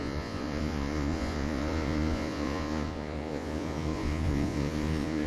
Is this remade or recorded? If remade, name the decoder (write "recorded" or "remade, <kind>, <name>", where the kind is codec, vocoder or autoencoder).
remade, vocoder, Vocos